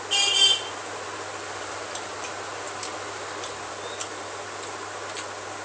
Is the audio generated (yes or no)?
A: no